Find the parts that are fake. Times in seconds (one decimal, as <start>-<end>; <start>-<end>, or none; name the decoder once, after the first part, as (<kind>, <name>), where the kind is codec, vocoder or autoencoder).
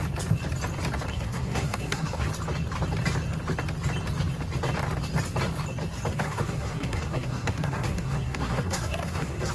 1.1-2.3 (codec, SNAC); 6.1-9.5